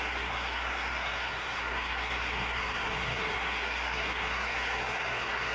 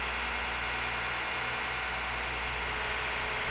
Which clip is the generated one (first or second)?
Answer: first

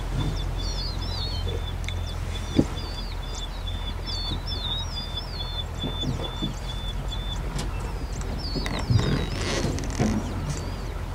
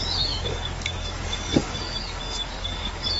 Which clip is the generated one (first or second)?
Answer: second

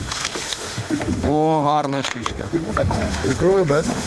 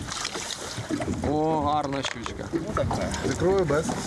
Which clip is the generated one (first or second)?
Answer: first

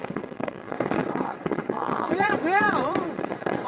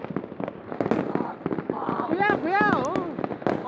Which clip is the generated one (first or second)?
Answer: first